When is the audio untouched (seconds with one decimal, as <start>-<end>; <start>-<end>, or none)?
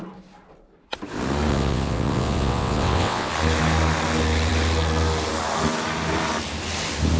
0.0-1.5; 3.3-7.2